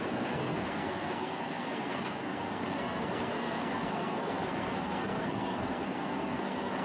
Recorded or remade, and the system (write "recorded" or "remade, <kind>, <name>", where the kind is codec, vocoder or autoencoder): remade, codec, SNAC